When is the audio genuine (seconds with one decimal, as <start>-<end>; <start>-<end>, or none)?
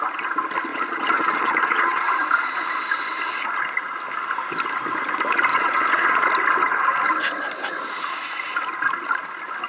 0.0-0.7; 2.1-5.5; 6.3-9.7